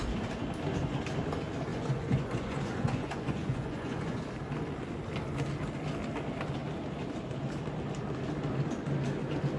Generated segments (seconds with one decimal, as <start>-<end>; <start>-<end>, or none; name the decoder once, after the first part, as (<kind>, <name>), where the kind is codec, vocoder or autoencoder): 1.7-4.2 (vocoder, Vocos)